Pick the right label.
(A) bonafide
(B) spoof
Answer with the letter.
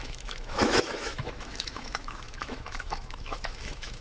B